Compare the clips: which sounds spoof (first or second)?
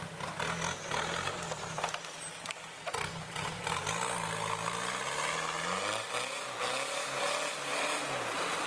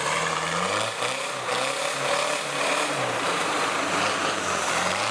second